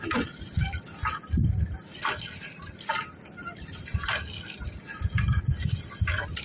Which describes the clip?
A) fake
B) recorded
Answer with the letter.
B